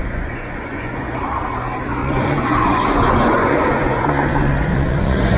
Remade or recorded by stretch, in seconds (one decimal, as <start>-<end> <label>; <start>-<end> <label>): 0.0-1.2 remade; 1.2-2.0 recorded; 2.0-5.4 remade